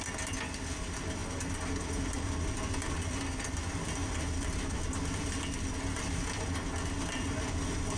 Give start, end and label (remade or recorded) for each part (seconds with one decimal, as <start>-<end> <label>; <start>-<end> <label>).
0.0-8.0 recorded